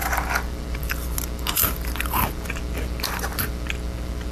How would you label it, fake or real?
real